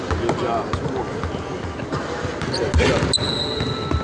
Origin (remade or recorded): recorded